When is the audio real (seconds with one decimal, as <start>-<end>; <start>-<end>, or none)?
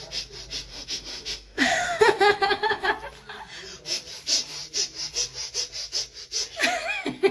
0.0-0.7; 2.9-7.3